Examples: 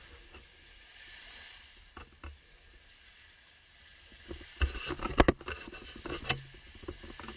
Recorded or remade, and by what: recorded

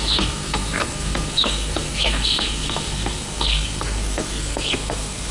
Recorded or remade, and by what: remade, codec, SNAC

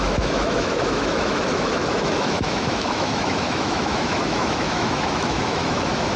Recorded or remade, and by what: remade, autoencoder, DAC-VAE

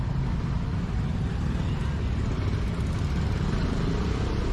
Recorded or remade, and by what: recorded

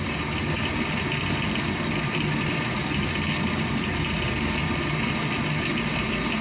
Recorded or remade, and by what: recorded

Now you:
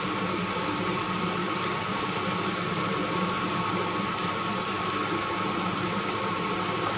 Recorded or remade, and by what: recorded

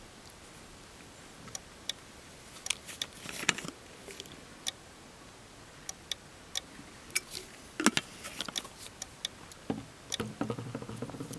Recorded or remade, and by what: recorded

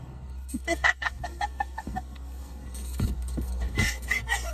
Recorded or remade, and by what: remade, codec, SNAC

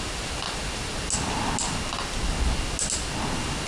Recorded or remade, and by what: recorded